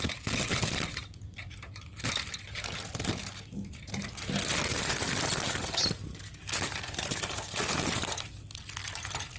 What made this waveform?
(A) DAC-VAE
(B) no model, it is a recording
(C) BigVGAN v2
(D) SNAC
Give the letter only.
B